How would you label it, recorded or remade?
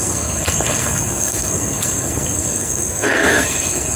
remade